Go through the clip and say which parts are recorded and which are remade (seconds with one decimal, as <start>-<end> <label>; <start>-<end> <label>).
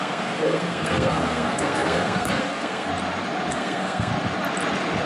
0.0-2.9 remade; 2.9-3.5 recorded; 3.5-4.1 remade; 4.1-5.1 recorded